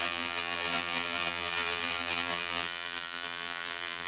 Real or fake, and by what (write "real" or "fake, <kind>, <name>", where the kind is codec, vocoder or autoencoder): fake, vocoder, BigVGAN v2